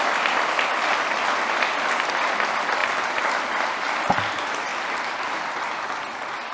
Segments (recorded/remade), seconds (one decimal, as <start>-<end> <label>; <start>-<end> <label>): 0.0-6.5 recorded